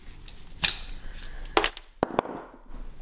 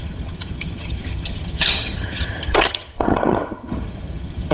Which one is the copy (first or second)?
second